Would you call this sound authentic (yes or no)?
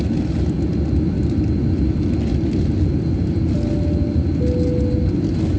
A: yes